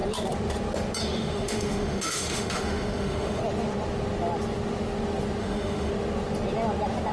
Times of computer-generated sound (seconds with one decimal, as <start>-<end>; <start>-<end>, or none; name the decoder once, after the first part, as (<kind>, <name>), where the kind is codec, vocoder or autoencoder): 1.0-3.4 (autoencoder, DAC-VAE); 5.4-5.9